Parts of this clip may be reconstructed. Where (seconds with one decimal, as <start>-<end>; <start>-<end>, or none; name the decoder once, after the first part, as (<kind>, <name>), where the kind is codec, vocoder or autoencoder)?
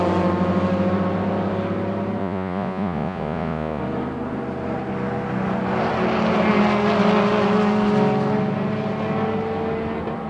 2.2-3.8 (vocoder, Vocos)